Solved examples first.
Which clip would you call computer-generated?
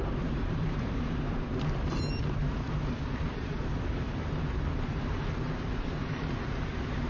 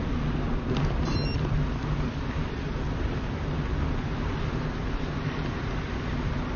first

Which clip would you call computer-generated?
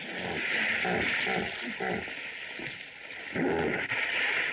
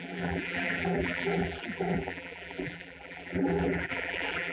second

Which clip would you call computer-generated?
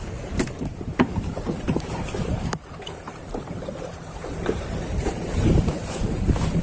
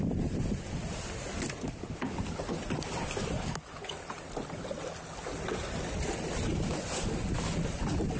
first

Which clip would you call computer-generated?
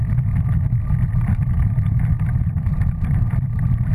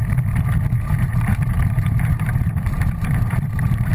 second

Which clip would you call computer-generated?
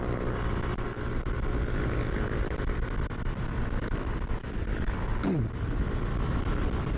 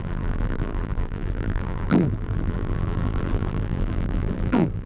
second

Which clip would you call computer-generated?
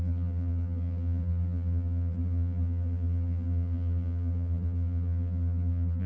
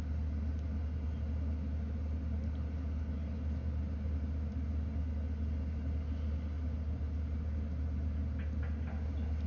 first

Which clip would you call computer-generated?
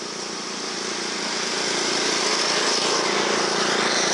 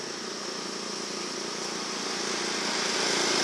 first